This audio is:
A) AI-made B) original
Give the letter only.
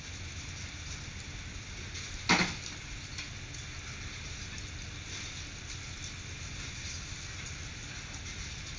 B